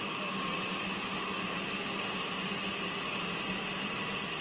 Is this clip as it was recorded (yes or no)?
yes